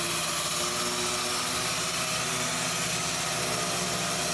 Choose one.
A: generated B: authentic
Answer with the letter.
B